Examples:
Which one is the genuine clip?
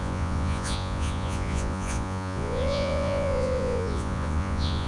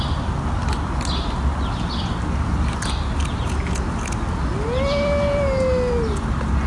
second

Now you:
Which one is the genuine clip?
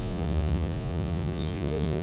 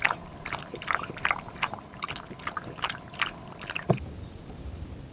second